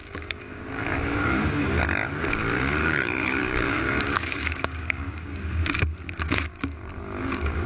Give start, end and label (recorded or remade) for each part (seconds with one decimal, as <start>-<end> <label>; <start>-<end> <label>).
0.0-1.8 remade; 1.8-2.8 recorded; 2.8-7.7 remade